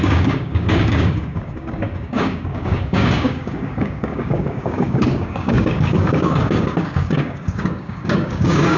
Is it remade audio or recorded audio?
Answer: remade